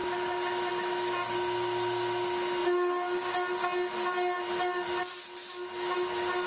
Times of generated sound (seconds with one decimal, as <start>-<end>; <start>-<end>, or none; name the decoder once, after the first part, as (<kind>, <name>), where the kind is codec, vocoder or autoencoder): none